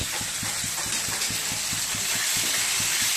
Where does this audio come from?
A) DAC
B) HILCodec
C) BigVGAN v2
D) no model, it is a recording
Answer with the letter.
D